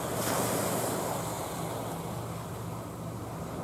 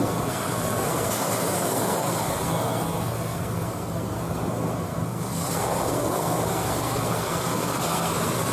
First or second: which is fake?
second